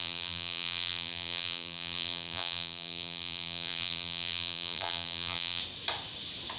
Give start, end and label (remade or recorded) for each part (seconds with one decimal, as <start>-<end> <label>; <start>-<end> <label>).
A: 0.0-5.6 remade; 5.6-6.6 recorded